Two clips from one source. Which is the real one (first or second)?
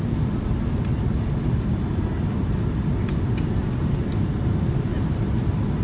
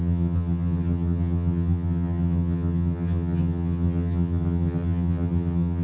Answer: first